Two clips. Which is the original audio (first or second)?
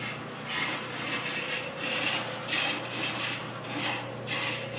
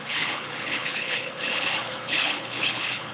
first